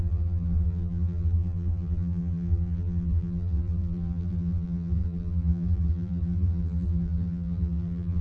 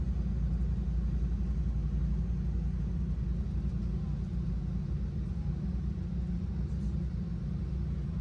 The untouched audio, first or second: second